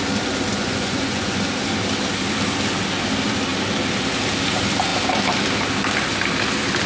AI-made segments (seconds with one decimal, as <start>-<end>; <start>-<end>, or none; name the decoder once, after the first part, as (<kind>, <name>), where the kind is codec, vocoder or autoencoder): 0.5-1.4 (vocoder, Vocos)